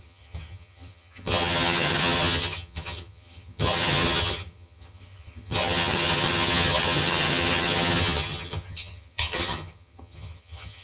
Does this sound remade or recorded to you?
remade